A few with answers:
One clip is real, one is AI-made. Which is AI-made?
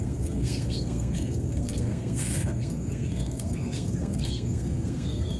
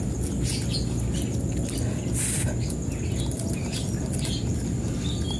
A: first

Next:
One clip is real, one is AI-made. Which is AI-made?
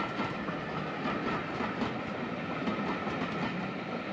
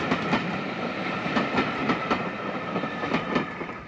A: second